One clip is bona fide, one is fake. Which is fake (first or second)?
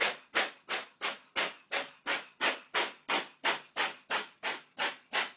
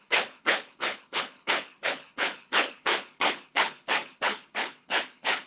second